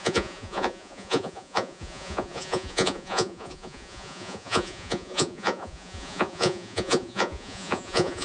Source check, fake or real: fake